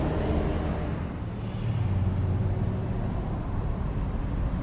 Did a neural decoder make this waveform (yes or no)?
no